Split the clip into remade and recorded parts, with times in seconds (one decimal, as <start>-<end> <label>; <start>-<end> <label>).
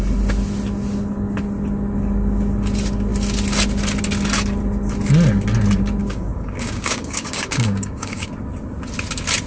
0.0-6.0 recorded; 6.0-8.3 remade; 8.3-9.5 recorded